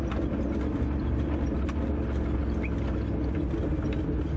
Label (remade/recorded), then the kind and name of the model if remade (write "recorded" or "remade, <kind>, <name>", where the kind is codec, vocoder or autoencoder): recorded